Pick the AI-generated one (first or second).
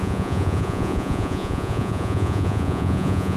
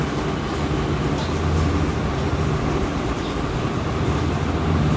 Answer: first